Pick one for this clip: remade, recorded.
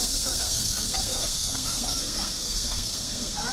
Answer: remade